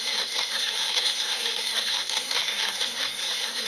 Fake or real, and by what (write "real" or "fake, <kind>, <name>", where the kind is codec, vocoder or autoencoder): fake, codec, SNAC